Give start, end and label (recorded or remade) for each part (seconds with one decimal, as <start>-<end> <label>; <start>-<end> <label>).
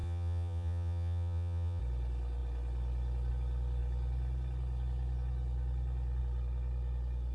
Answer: 0.0-1.8 remade; 1.8-7.3 recorded